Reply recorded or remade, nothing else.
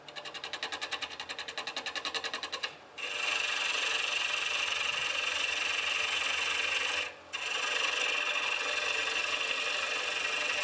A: recorded